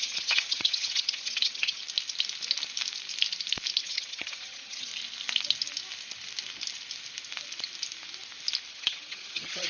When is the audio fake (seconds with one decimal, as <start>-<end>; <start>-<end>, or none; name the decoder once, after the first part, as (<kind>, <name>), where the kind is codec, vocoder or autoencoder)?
0.0-1.8 (vocoder, HiFi-GAN); 3.8-4.9; 8.7-9.7

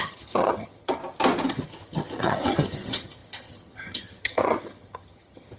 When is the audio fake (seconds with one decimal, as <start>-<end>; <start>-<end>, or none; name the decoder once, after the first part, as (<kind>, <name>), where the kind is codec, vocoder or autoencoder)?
0.0-1.0 (vocoder, HiFi-GAN); 1.5-5.6